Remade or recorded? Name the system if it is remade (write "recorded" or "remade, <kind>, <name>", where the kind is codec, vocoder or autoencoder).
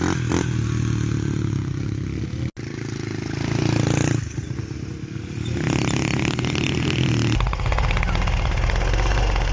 recorded